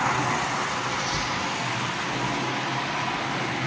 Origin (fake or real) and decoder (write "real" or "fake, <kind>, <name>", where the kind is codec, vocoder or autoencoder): real